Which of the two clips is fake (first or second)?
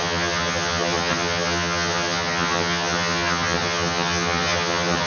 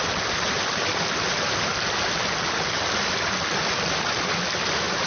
first